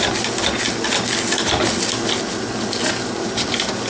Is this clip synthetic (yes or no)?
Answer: no